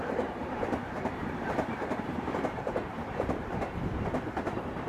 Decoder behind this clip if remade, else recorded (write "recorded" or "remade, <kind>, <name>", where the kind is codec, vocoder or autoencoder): remade, vocoder, BigVGAN v2